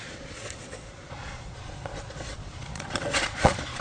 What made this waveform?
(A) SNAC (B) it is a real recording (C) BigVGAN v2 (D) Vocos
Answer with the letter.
D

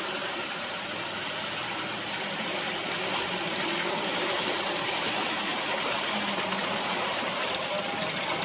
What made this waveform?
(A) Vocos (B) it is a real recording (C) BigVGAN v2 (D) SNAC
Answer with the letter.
C